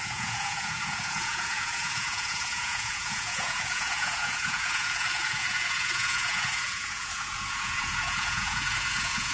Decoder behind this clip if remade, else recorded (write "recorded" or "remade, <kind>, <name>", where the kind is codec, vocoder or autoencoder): remade, vocoder, Vocos